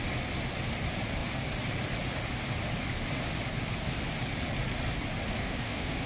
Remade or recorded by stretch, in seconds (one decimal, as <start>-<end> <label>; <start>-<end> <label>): 0.0-5.4 recorded; 5.4-6.1 remade